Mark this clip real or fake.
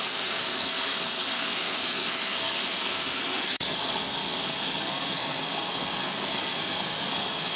fake